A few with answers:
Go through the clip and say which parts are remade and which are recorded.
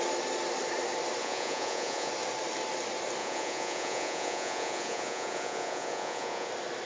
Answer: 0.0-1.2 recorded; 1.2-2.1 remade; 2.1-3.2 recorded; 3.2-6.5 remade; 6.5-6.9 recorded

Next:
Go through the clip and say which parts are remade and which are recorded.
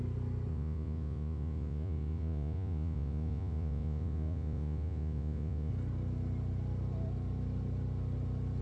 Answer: 0.0-0.5 recorded; 0.5-5.7 remade; 5.7-8.6 recorded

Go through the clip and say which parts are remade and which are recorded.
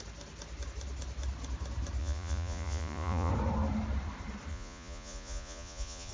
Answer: 0.0-2.0 recorded; 2.0-3.3 remade; 3.3-4.5 recorded; 4.5-6.1 remade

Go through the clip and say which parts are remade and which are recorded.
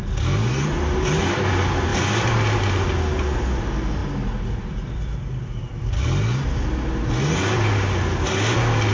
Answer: 0.0-8.9 recorded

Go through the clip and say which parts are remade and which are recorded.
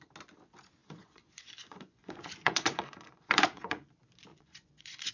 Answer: 0.0-0.8 recorded; 0.8-3.9 remade; 3.9-4.3 recorded; 4.3-5.1 remade